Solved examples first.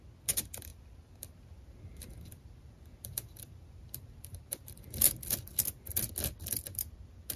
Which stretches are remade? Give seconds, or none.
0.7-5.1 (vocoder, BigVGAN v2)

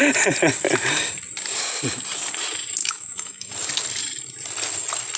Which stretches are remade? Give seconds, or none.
2.8-3.5 (autoencoder, DAC-VAE)

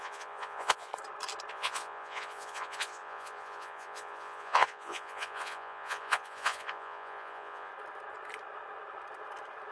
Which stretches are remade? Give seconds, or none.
0.0-0.9 (vocoder, Vocos); 1.5-7.7

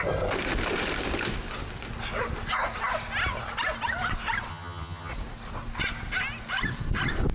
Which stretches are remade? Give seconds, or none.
4.5-5.1 (vocoder, HiFi-GAN)

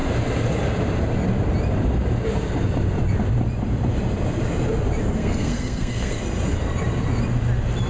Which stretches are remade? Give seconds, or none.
5.2-6.2 (codec, SNAC)